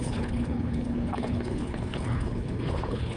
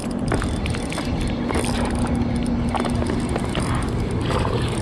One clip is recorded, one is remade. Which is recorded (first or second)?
second